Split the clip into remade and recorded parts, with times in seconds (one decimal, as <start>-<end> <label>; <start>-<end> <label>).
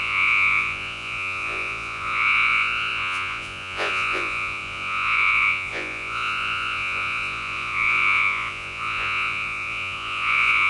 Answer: 0.0-10.7 remade